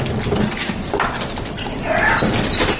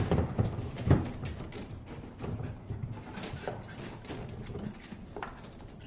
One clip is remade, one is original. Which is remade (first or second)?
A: second